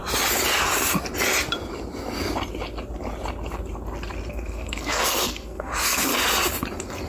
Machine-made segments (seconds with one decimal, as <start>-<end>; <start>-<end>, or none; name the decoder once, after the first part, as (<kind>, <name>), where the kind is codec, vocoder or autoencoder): 4.3-6.1 (codec, SNAC)